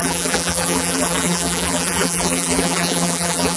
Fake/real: fake